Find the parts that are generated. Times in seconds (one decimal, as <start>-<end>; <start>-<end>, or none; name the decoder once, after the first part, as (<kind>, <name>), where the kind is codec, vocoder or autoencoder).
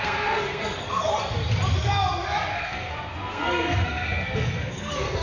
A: 0.0-1.1 (codec, SNAC); 2.5-5.2